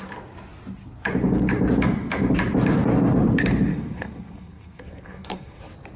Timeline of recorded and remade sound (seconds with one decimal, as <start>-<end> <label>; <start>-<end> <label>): 0.0-3.7 recorded; 3.7-5.6 remade; 5.6-6.0 recorded